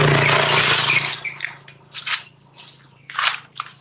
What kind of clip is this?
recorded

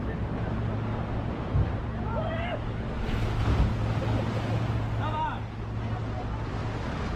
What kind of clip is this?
recorded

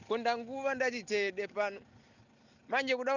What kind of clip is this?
recorded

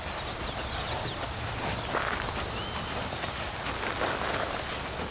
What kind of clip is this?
recorded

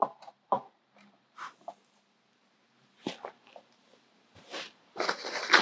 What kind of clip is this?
remade